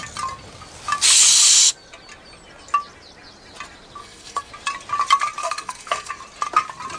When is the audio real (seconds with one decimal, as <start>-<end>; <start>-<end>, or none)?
0.0-4.0; 4.5-5.4; 6.1-7.0